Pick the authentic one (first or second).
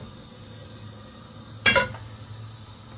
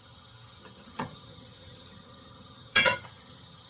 first